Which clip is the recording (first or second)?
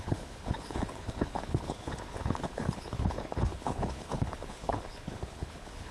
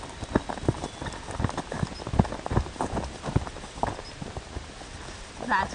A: second